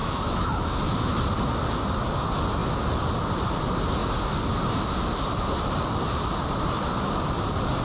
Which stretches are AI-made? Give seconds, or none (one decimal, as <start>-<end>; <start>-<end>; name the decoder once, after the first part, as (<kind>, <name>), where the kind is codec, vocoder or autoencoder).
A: 0.0-1.2 (autoencoder, DAC-VAE)